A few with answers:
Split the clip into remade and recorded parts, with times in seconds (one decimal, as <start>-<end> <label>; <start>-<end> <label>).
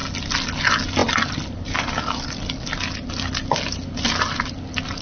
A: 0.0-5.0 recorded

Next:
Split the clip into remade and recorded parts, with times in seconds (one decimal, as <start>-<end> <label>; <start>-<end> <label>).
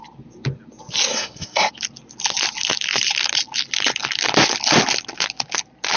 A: 0.0-1.1 recorded; 1.1-1.7 remade; 1.7-6.0 recorded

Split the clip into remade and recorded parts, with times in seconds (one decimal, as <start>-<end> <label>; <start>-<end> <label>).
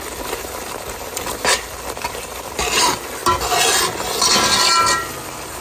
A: 0.0-5.6 recorded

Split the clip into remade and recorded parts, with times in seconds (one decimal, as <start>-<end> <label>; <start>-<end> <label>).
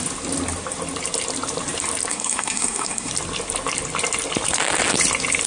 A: 0.0-2.1 recorded; 2.1-3.1 remade; 3.1-5.5 recorded